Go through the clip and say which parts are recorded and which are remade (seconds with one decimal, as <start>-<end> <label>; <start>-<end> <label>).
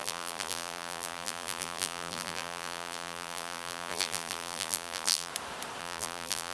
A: 0.0-5.3 remade; 5.3-5.8 recorded; 5.8-6.5 remade